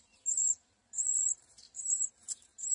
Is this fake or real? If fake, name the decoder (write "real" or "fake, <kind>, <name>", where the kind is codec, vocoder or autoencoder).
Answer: fake, vocoder, BigVGAN v2